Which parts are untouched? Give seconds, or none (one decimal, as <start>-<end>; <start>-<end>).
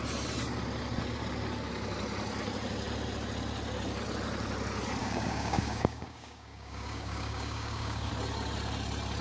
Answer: 0.0-5.0; 8.1-9.2